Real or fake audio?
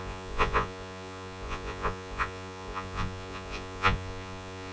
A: fake